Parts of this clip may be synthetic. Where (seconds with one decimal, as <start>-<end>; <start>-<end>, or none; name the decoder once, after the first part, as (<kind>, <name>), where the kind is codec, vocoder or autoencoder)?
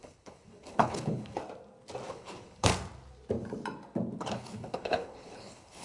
0.0-1.4 (codec, HILCodec); 2.1-2.7; 4.2-5.8